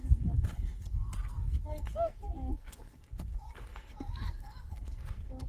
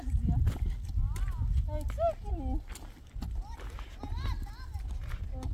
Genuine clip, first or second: second